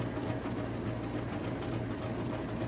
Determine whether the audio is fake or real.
real